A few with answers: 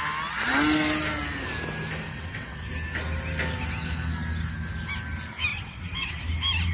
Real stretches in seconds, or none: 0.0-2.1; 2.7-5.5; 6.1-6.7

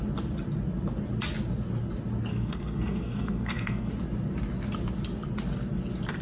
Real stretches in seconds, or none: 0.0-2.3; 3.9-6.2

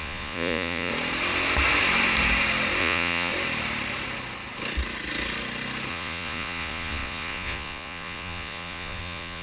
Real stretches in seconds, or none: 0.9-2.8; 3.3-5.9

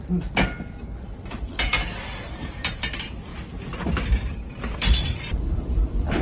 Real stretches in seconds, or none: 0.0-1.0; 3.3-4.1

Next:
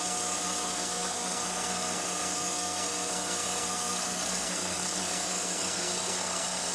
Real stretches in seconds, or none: none